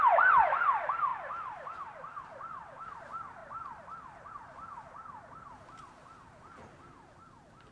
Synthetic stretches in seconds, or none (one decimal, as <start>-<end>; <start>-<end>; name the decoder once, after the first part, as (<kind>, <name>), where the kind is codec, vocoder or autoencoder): 3.4-4.3 (vocoder, BigVGAN v2)